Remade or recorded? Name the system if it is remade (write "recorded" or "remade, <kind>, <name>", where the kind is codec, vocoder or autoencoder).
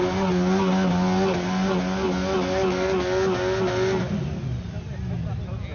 recorded